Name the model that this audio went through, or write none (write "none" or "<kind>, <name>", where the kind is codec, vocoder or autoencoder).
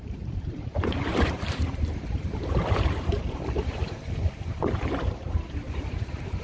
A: vocoder, BigVGAN v2